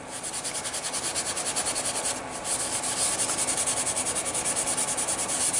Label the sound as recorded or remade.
recorded